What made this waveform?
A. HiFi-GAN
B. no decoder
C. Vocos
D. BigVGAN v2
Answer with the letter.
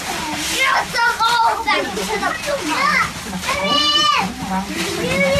B